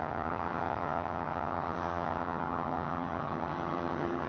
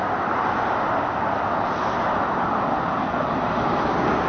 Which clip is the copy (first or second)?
first